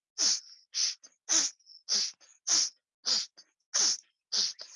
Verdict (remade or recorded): recorded